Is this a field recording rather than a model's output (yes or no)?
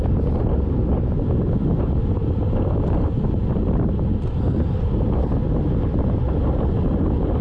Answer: yes